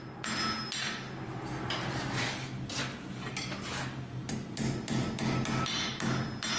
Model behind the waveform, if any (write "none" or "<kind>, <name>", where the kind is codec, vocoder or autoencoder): none